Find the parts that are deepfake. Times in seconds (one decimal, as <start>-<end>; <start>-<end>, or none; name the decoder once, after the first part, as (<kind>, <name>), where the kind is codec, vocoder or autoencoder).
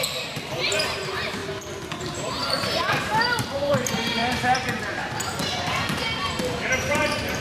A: 0.0-1.4 (vocoder, BigVGAN v2); 2.0-4.2; 6.4-7.4